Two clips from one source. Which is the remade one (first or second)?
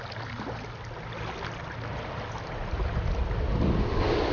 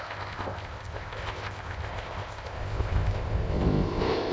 second